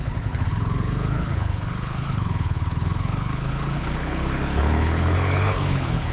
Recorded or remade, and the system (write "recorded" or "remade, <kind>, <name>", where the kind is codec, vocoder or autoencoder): remade, codec, HILCodec